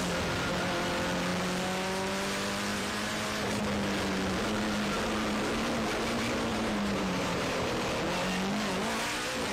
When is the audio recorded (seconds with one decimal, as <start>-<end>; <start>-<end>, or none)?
0.0-2.7; 3.6-6.5; 7.7-9.5